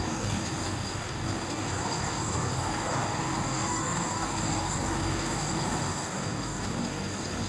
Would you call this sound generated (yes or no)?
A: yes